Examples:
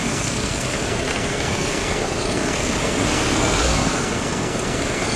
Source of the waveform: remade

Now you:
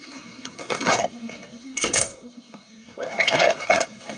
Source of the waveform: remade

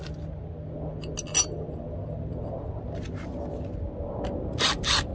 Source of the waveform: recorded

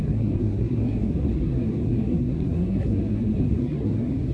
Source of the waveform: remade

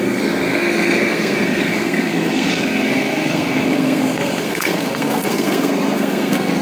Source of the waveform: remade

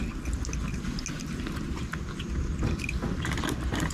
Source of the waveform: recorded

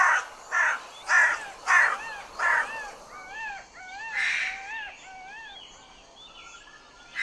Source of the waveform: recorded